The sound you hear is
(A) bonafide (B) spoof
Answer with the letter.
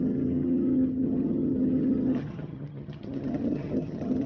B